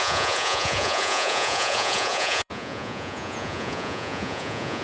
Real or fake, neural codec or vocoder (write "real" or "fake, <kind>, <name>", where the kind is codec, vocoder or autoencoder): fake, vocoder, Vocos